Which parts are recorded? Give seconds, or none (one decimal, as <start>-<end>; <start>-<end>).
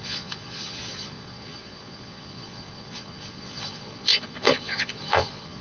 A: none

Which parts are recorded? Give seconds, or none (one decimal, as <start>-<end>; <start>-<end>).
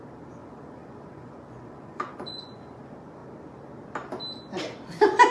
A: 0.0-0.4; 2.8-5.3